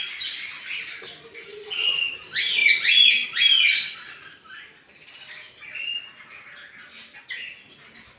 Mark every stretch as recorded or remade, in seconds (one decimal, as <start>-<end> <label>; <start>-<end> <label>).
0.0-8.2 recorded